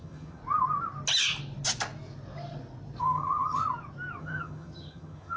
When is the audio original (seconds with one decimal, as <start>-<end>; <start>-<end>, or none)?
0.4-3.0; 3.6-4.2